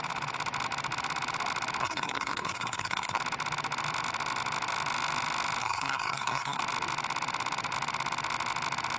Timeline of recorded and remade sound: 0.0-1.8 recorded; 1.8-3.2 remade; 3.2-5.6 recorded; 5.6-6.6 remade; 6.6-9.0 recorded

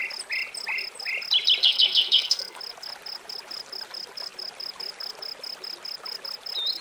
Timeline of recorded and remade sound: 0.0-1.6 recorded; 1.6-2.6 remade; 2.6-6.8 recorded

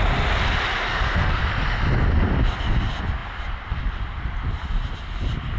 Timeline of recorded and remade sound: 0.0-0.9 recorded; 0.9-1.4 remade; 1.4-5.6 recorded

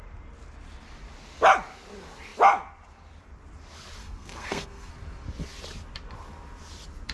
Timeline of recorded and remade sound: 0.0-4.0 recorded; 4.0-4.9 remade; 4.9-7.1 recorded

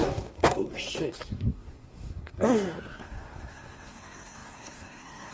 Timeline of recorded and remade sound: 0.0-5.3 remade

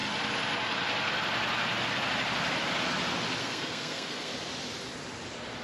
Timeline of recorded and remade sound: 0.0-3.4 recorded; 3.4-4.3 remade; 4.3-5.6 recorded

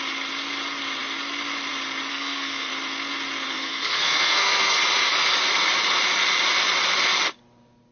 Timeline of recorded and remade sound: 0.0-2.1 recorded; 2.1-2.7 remade; 2.7-3.5 recorded; 3.5-4.8 remade; 4.8-7.9 recorded

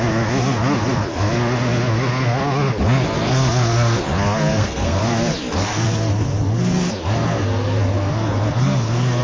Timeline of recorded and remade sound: 0.0-4.5 recorded; 4.5-5.0 remade; 5.0-9.2 recorded